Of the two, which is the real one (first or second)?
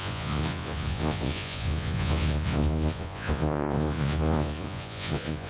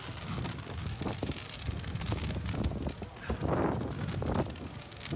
second